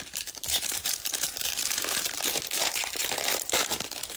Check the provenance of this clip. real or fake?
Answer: fake